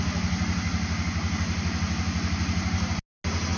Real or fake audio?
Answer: real